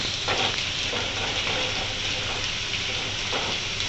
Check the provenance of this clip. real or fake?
real